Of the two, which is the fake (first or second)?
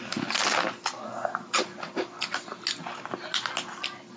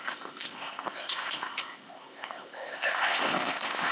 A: second